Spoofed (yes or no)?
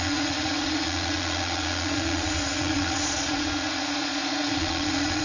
yes